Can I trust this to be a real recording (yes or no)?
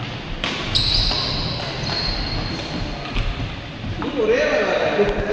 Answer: yes